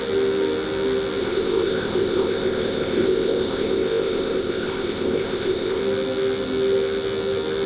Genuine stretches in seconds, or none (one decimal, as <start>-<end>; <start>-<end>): 0.0-1.2; 5.8-7.7